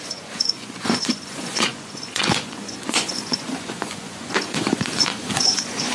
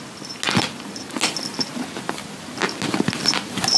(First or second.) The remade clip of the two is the first